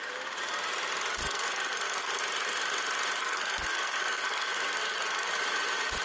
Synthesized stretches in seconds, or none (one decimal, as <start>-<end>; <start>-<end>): 1.2-2.2; 3.2-5.3